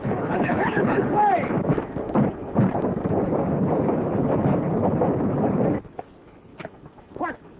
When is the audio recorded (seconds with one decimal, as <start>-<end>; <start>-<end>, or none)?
1.2-5.8; 6.5-7.6